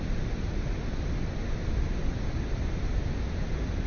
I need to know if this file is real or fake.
real